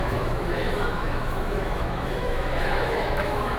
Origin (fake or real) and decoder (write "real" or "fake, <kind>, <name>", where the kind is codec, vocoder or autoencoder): fake, autoencoder, DAC-VAE